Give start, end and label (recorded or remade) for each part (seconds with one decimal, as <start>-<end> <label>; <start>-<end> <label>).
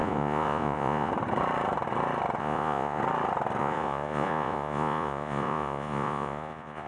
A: 0.0-1.1 remade; 1.1-2.4 recorded; 2.4-3.0 remade; 3.0-3.6 recorded; 3.6-6.9 remade